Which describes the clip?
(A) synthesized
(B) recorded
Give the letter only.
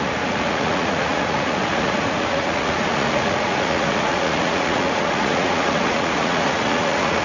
A